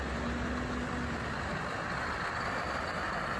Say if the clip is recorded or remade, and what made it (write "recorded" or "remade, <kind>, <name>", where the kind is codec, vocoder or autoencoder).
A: recorded